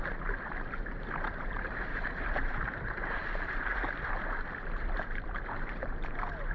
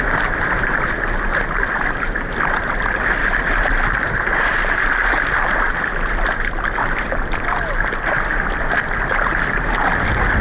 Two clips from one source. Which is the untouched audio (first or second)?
second